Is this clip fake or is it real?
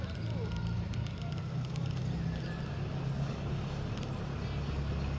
real